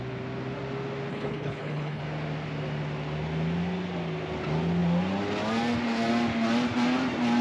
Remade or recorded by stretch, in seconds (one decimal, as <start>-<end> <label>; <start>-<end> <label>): 0.0-1.1 recorded; 1.1-2.0 remade; 2.0-7.4 recorded